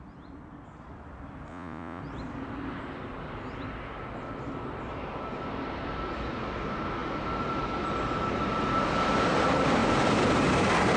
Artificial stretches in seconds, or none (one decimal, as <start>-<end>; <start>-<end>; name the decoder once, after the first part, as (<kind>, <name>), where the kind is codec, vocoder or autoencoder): 1.5-2.0 (vocoder, Vocos)